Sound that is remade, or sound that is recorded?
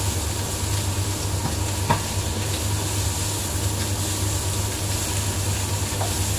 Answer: recorded